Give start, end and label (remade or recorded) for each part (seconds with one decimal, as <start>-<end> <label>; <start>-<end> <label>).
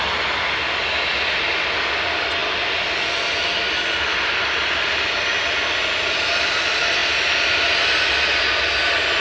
0.0-9.2 recorded